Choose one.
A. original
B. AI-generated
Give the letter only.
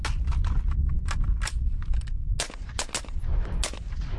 A